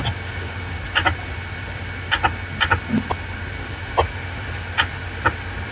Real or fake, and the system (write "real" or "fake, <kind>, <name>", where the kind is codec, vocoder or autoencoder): real